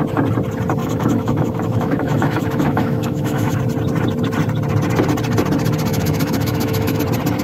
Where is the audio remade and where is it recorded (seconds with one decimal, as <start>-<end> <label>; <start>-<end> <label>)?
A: 0.0-0.8 recorded; 0.8-3.6 remade; 3.6-5.9 recorded; 5.9-7.0 remade; 7.0-7.4 recorded